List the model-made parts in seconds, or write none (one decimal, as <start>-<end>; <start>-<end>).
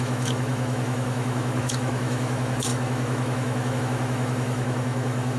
0.0-5.4